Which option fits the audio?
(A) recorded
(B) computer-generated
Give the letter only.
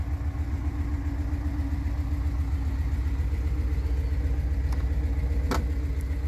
A